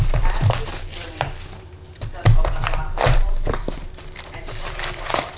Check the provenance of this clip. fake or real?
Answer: fake